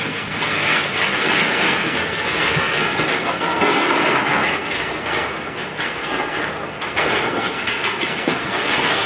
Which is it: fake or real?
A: fake